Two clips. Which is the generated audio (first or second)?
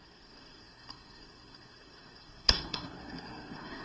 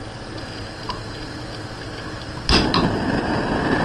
first